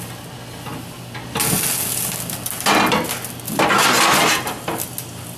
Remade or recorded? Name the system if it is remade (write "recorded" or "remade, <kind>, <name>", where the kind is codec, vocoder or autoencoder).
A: recorded